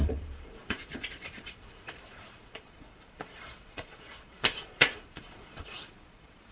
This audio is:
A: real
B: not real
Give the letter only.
B